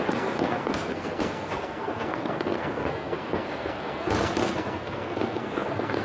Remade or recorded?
remade